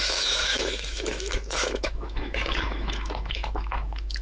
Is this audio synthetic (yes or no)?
yes